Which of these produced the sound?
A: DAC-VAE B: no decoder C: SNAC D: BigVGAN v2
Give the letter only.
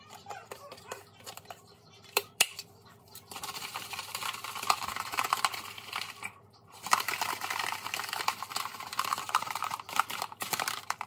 D